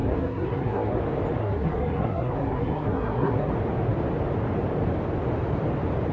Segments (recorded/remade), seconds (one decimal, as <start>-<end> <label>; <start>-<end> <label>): 0.0-1.0 remade; 1.0-1.4 recorded; 1.4-3.5 remade; 3.5-6.1 recorded